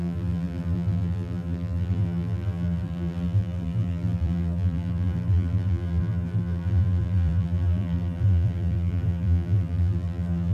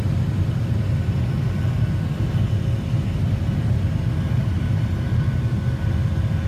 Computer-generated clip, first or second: first